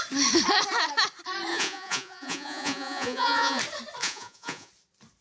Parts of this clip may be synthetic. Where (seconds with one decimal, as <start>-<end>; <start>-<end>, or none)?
1.5-3.6; 4.0-4.7